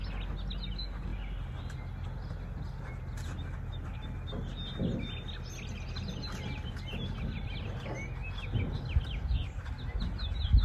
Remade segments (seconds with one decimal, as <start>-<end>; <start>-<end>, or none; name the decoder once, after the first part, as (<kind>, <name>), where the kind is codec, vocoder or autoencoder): none